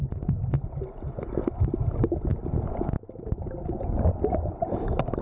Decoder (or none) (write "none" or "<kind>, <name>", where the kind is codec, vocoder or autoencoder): none